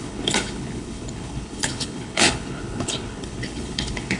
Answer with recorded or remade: remade